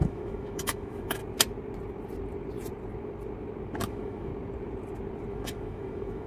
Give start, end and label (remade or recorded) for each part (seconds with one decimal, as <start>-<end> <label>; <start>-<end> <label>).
0.0-1.2 remade; 1.2-3.9 recorded; 3.9-4.3 remade; 4.3-5.3 recorded; 5.3-6.3 remade